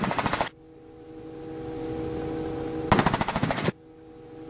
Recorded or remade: recorded